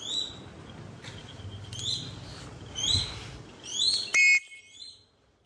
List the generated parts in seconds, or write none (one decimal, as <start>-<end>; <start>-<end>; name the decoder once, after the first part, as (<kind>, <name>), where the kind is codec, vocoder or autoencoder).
none